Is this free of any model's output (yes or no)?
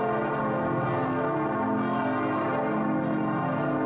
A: yes